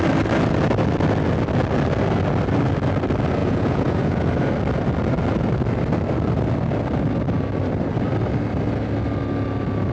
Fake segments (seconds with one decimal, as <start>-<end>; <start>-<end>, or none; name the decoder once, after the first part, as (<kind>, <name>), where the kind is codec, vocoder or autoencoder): 3.4-4.3 (vocoder, Vocos)